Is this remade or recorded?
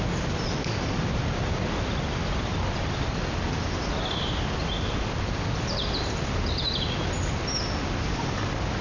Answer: recorded